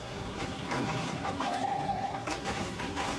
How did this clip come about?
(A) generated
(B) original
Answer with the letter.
A